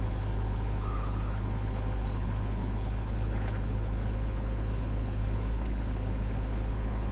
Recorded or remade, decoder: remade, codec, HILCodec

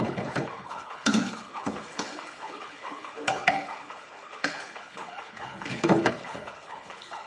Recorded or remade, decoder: remade, codec, HILCodec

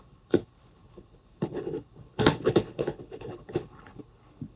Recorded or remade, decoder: remade, codec, HILCodec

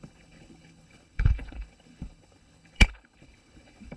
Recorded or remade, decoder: remade, codec, HILCodec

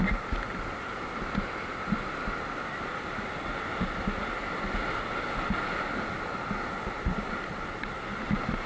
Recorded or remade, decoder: recorded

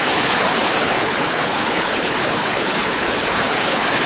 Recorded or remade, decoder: remade, codec, HILCodec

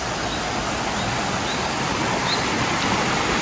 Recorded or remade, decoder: recorded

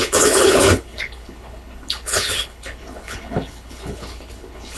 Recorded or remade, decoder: remade, codec, HILCodec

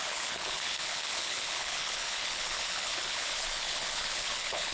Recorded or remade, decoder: remade, codec, HILCodec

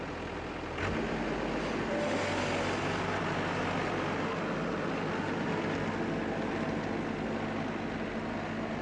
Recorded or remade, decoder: recorded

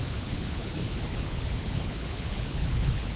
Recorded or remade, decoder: remade, codec, HILCodec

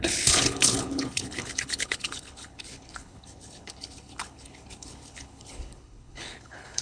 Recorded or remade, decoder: remade, codec, HILCodec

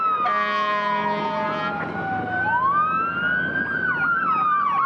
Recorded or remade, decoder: recorded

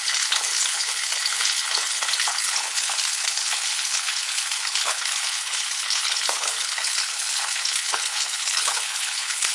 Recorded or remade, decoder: remade, codec, HILCodec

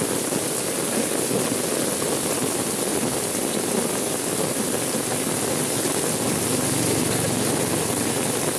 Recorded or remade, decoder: recorded